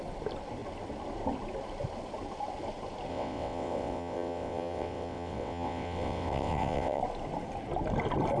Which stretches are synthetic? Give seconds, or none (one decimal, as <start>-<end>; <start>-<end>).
3.1-7.0